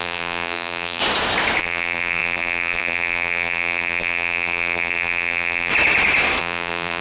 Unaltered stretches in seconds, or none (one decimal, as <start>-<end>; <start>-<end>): 1.0-1.6; 5.7-6.4